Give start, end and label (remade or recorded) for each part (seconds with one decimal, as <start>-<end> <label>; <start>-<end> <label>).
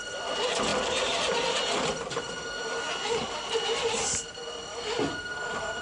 0.0-0.7 recorded; 0.7-4.2 remade; 4.2-5.8 recorded